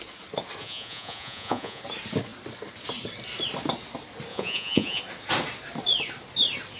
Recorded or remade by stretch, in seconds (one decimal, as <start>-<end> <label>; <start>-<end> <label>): 0.0-0.6 recorded; 0.6-1.8 remade; 1.8-4.3 recorded; 4.3-5.0 remade; 5.0-6.8 recorded